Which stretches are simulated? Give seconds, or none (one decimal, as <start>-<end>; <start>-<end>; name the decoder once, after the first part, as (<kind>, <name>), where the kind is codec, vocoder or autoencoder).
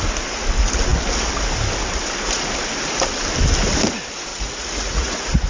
4.3-5.5 (vocoder, Vocos)